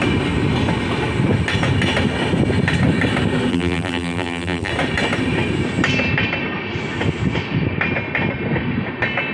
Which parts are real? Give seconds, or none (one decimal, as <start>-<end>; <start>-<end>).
0.0-3.5; 4.7-9.3